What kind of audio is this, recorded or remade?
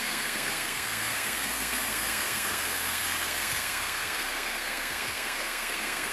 remade